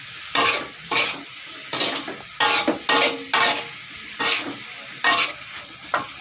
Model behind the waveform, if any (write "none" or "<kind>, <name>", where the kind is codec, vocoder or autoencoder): none